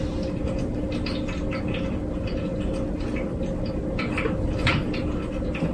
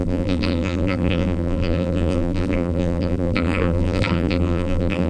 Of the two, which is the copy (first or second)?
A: second